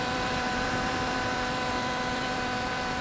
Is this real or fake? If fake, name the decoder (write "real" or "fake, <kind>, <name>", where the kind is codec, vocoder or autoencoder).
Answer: fake, vocoder, BigVGAN v2